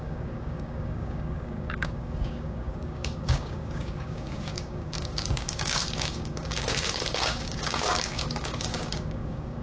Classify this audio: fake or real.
fake